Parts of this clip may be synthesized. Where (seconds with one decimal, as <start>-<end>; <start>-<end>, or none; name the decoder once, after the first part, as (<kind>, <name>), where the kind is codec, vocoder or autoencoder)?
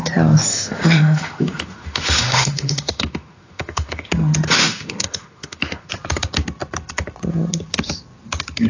0.5-4.1 (autoencoder, DAC-VAE); 4.6-5.9